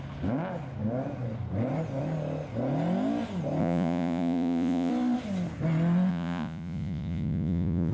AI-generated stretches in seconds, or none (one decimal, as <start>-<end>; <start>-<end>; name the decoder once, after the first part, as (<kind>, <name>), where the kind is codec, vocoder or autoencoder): 3.6-4.9 (vocoder, Vocos); 6.1-7.9